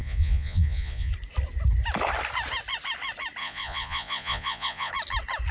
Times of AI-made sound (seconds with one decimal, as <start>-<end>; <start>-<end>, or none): 0.0-1.1; 3.4-4.9